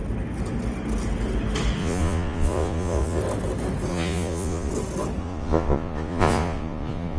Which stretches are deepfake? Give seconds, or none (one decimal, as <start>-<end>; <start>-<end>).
1.8-3.2; 3.9-4.7; 5.2-7.2